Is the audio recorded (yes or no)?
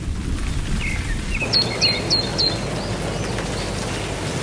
yes